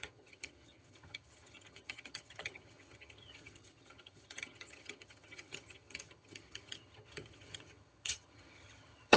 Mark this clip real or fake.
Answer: fake